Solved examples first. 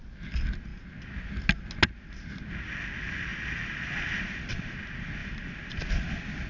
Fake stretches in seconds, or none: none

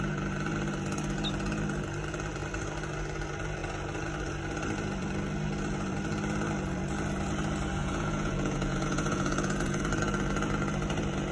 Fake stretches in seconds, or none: 7.8-9.8

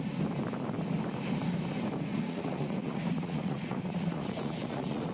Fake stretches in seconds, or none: 2.1-5.1

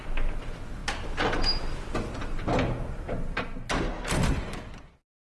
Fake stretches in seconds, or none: none